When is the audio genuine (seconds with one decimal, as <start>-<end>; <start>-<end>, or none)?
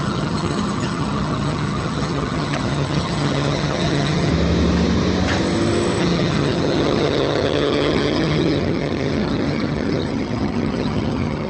4.3-6.0